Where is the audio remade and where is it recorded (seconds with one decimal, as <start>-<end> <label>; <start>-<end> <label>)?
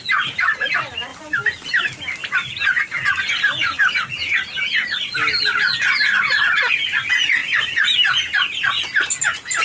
0.0-2.2 recorded; 2.2-3.9 remade; 3.9-9.6 recorded